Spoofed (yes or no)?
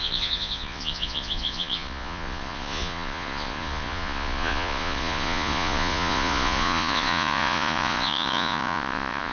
yes